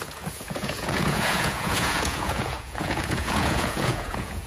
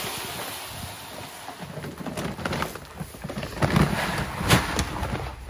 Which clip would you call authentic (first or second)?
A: second